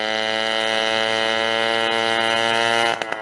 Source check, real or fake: real